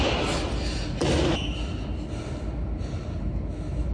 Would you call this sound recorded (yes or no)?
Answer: yes